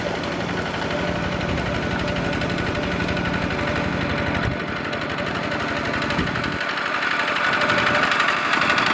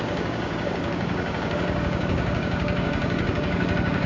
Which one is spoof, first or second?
second